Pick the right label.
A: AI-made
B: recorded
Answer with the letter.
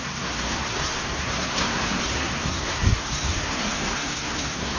A